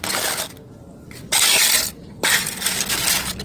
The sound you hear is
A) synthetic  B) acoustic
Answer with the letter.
B